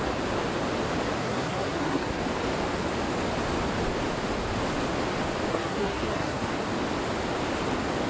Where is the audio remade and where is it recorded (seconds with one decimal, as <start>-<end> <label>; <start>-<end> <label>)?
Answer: 0.0-1.2 recorded; 1.2-2.2 remade; 2.2-5.5 recorded; 5.5-6.5 remade; 6.5-8.1 recorded